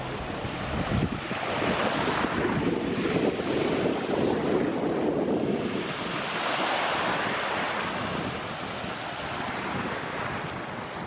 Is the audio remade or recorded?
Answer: recorded